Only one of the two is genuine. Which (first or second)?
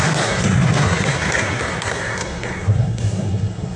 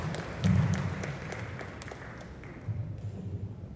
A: second